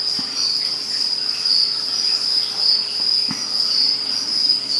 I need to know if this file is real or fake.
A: real